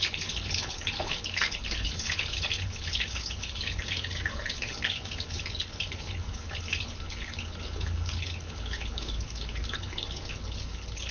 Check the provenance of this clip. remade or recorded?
remade